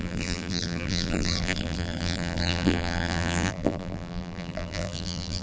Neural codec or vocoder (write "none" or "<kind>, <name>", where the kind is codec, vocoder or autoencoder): vocoder, BigVGAN v2